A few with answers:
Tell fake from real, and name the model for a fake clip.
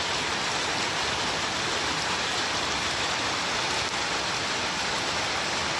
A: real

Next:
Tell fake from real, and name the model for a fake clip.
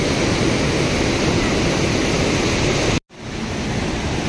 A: real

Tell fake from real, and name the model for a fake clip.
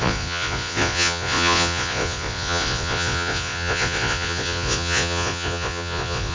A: fake, vocoder, Vocos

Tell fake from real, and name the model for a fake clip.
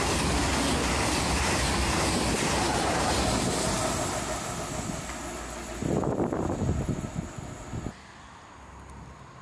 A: real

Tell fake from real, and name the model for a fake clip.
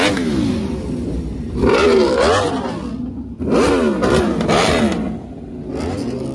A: real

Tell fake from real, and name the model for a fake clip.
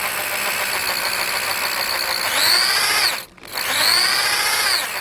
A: real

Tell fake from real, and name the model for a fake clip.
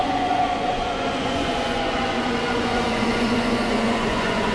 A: fake, vocoder, Vocos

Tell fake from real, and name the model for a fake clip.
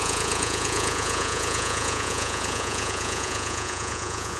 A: fake, vocoder, Vocos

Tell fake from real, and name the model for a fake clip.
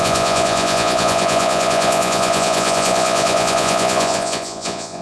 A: fake, vocoder, Vocos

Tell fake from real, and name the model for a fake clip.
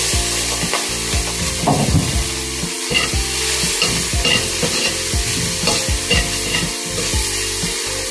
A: real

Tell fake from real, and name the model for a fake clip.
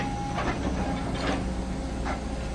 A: real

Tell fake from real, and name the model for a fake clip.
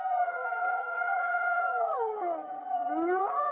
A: fake, vocoder, Vocos